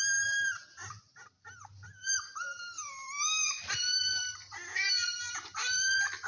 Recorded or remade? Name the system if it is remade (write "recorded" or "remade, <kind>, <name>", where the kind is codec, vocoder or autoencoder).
remade, vocoder, BigVGAN v2